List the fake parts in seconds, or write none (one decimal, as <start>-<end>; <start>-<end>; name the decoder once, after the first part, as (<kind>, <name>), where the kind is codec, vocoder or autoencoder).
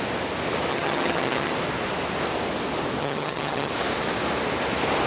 0.7-1.5 (vocoder, HiFi-GAN); 3.0-3.7